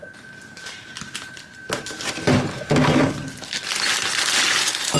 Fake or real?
real